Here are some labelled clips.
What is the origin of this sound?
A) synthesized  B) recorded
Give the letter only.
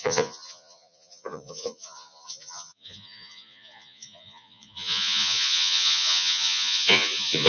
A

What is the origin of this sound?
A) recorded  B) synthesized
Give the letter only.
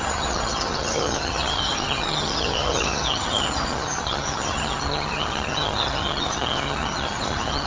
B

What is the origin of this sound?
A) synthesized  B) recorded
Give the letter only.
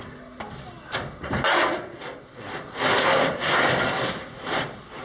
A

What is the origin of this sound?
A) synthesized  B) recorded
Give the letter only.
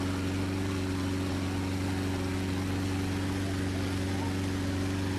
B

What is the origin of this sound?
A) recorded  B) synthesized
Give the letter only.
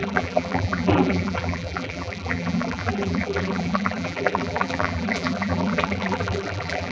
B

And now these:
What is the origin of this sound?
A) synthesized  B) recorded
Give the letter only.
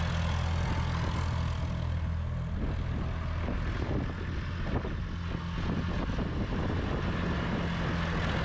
B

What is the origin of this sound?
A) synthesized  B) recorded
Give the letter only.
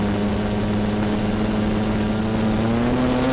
B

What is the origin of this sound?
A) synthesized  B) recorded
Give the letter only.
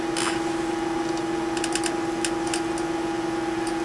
B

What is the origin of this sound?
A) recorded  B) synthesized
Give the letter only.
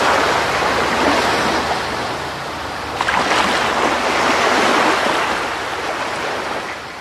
A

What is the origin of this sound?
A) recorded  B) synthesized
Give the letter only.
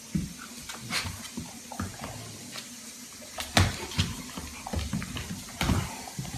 A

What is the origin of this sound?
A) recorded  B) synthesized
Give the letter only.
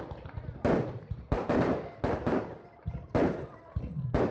A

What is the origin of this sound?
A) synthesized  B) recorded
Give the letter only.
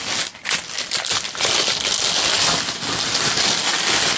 B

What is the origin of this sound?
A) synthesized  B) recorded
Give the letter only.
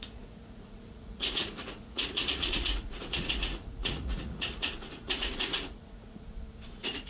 A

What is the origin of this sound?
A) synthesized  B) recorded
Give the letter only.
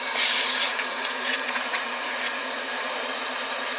A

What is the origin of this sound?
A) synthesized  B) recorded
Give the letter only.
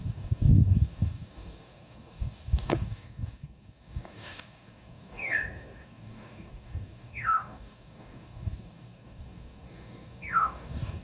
A